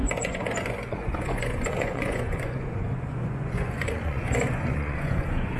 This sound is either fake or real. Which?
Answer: fake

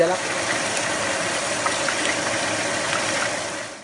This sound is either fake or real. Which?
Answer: real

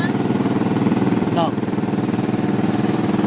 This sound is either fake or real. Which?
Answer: fake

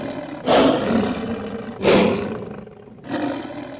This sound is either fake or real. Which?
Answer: real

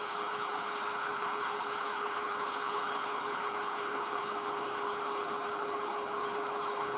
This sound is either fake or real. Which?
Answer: fake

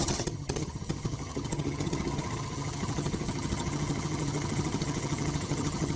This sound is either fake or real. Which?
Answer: fake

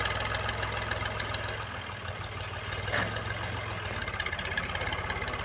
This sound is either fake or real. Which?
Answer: real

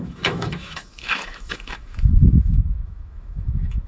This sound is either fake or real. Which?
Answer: fake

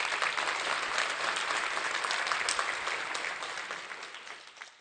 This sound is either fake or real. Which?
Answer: real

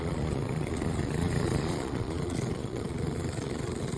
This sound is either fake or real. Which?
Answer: fake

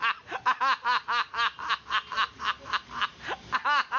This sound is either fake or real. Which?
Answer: real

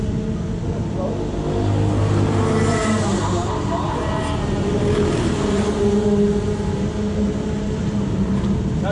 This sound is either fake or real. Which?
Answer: real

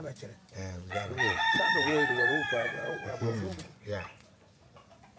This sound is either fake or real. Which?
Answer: fake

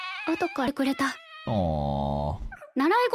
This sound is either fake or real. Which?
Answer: real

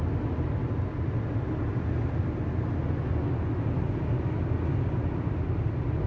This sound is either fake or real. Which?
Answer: real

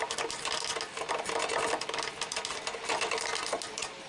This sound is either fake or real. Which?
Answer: real